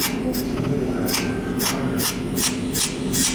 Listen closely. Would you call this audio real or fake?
real